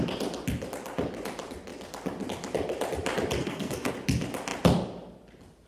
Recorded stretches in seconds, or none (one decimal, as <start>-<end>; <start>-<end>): 0.0-3.4; 3.9-5.7